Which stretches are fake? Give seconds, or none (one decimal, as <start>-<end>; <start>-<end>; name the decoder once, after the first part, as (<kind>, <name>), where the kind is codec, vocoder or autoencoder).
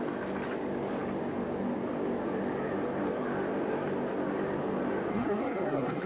5.1-6.1 (codec, SNAC)